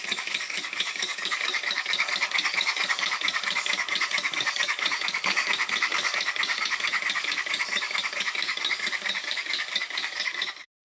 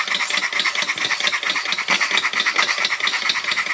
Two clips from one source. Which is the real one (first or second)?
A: second